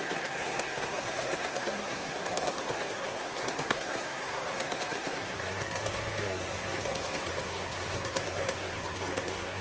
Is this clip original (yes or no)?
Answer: no